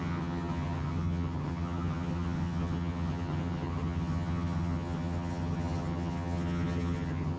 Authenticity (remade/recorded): remade